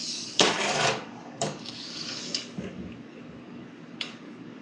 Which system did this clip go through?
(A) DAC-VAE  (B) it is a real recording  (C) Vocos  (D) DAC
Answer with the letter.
D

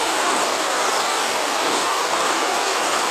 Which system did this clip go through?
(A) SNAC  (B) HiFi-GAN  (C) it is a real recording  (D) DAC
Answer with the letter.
D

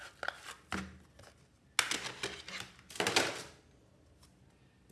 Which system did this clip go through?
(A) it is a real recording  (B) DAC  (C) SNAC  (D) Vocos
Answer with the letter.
A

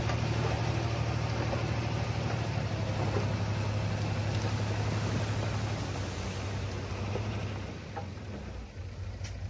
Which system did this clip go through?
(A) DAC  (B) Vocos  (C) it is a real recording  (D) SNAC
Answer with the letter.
C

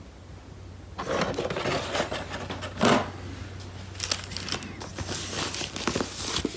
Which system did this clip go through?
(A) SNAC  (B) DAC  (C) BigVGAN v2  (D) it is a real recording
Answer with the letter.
D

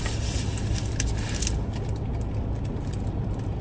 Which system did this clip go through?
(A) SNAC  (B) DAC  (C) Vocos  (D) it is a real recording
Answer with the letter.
D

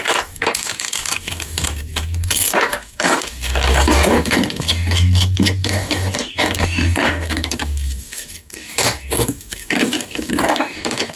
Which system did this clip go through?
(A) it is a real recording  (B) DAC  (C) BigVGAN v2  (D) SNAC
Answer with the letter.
B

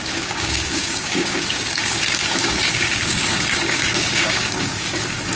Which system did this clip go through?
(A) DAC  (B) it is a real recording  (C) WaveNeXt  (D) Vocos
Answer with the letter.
A